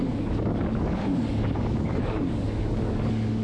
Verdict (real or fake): fake